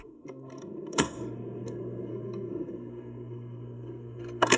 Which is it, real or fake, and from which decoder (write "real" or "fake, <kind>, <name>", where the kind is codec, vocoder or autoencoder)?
fake, codec, SNAC